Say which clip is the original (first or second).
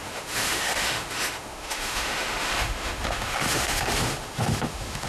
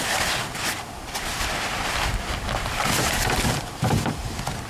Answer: second